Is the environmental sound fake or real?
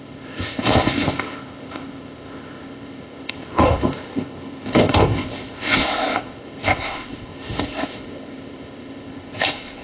fake